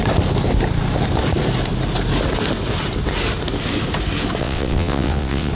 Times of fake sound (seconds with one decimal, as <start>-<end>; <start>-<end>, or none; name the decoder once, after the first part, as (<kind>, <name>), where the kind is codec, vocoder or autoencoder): 4.4-5.5 (vocoder, WaveNeXt)